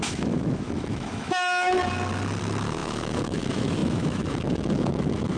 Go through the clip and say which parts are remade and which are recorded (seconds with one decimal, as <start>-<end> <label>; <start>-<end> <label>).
0.0-1.8 remade; 1.8-2.4 recorded; 2.4-5.4 remade